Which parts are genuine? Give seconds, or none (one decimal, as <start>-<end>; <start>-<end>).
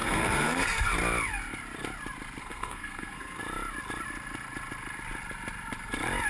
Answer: 0.9-2.4; 3.4-6.3